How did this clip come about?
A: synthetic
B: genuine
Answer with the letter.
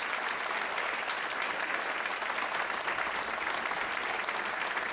B